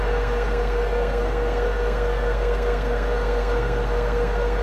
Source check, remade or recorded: remade